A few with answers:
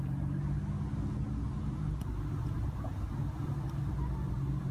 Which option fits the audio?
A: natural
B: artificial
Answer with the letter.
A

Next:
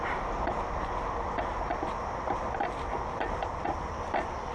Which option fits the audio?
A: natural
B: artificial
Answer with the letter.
A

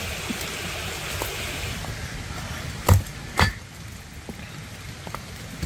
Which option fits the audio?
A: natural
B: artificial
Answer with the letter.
A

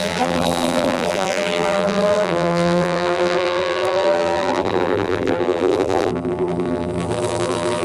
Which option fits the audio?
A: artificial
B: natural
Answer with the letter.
A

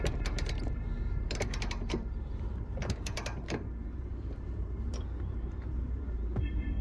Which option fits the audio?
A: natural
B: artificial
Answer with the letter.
B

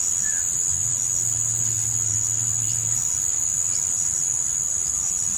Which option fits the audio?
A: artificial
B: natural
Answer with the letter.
B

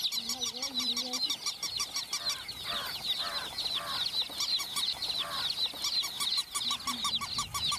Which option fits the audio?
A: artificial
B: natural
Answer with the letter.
B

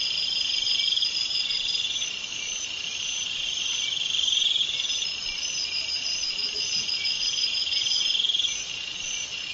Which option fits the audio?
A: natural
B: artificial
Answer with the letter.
B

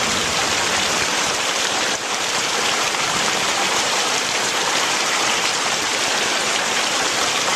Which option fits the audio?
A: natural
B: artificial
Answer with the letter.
B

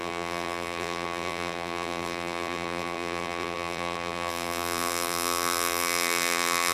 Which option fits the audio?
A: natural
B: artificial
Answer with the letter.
B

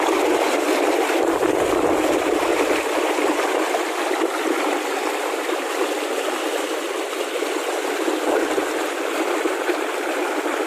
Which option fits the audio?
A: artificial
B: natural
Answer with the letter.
A